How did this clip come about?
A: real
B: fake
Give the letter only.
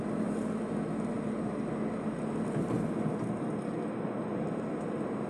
A